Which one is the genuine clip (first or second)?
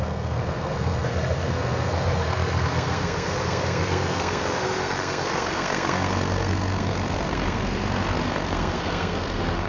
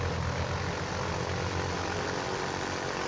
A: second